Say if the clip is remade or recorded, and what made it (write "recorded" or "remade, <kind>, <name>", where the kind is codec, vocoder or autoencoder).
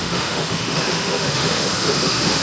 remade, autoencoder, DAC-VAE